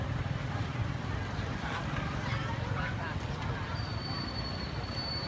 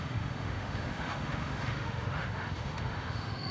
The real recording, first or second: first